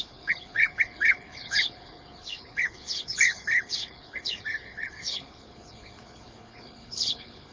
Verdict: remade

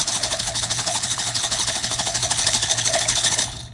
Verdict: remade